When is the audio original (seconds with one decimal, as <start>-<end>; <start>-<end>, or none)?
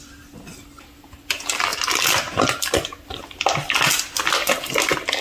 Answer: 0.0-1.7; 3.7-4.4